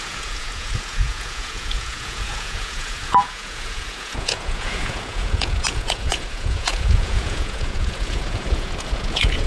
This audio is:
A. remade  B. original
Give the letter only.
A